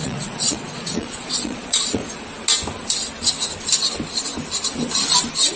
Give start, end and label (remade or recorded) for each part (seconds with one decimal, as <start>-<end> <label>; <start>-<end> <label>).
0.0-2.0 remade; 2.0-5.6 recorded